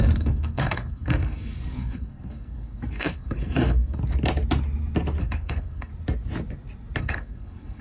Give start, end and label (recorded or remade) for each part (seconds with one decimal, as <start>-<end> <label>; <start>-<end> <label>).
0.0-4.0 remade; 4.0-5.2 recorded; 5.2-5.9 remade; 5.9-7.0 recorded; 7.0-7.8 remade